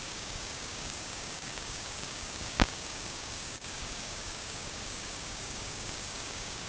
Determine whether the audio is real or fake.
fake